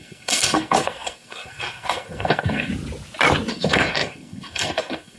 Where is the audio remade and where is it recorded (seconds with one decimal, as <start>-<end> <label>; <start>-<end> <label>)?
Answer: 0.0-2.7 remade; 2.7-3.5 recorded; 3.5-5.2 remade